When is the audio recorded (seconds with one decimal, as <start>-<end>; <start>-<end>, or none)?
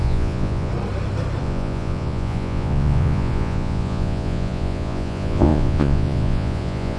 0.7-1.4